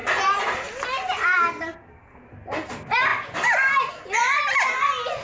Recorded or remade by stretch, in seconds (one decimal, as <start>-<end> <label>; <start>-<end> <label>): 0.0-5.2 recorded